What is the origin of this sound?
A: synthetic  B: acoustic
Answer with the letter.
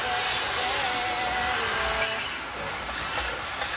B